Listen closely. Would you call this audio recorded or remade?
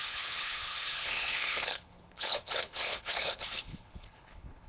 remade